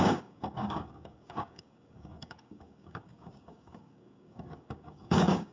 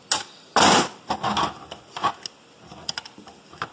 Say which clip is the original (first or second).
second